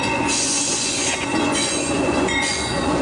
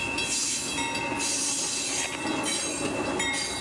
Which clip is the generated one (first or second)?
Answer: first